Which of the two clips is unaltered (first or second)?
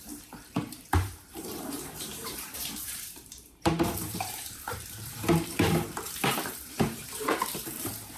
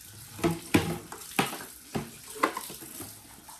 second